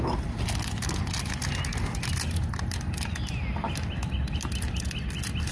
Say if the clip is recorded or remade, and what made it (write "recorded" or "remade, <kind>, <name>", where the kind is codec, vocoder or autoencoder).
recorded